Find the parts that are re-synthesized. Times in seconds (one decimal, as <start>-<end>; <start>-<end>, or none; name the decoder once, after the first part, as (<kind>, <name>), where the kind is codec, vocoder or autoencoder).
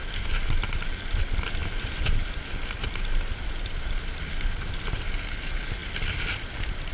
none